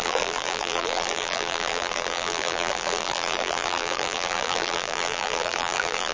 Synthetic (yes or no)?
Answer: yes